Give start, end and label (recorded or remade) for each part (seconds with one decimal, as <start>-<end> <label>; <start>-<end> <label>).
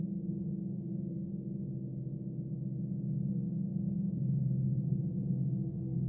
0.0-1.3 remade; 1.3-3.3 recorded; 3.3-6.1 remade